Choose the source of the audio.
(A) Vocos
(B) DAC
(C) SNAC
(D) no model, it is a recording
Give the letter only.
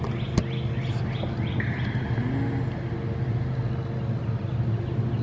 D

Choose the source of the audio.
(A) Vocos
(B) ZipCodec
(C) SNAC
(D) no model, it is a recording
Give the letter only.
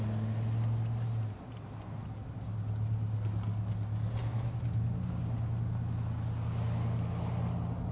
D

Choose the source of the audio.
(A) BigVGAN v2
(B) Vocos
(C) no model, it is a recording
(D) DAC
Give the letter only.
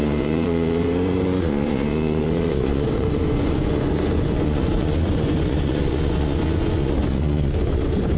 B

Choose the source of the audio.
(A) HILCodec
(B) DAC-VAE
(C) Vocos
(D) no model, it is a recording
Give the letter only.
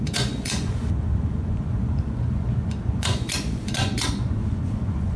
C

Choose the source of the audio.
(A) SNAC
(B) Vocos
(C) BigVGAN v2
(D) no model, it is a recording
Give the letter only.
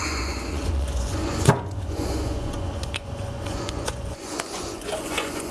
B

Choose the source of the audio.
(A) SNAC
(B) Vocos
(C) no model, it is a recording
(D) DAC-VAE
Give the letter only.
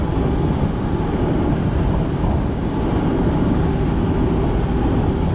C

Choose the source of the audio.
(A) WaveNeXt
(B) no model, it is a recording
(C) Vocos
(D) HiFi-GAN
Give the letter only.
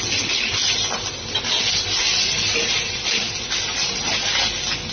B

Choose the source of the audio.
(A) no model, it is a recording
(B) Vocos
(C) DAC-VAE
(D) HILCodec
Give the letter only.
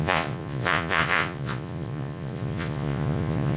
B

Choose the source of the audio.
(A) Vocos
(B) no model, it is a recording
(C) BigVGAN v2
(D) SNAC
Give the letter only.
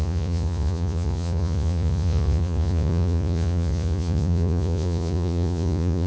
A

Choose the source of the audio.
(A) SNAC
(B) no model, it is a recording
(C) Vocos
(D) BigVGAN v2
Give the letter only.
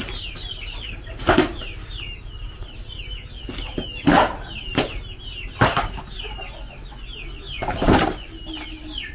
B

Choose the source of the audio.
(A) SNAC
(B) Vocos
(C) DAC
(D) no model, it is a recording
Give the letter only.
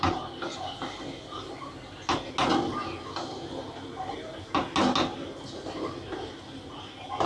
D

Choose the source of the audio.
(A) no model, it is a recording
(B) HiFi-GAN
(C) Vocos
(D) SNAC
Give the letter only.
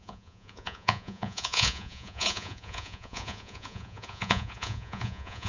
C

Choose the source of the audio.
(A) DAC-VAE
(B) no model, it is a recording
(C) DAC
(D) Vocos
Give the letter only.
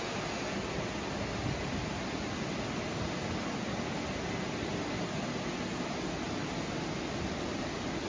B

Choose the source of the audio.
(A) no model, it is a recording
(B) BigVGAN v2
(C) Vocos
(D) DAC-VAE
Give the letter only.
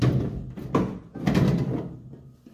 A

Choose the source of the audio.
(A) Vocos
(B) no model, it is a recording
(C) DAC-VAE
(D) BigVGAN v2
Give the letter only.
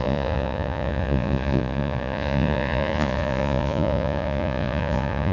A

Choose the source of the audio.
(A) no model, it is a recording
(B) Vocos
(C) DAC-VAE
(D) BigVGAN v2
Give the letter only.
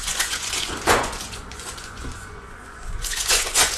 B